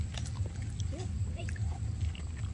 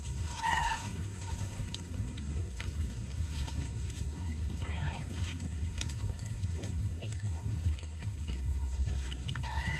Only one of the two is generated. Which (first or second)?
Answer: second